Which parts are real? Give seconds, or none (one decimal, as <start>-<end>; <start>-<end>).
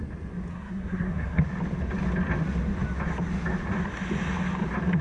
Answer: 0.0-0.5; 1.4-5.0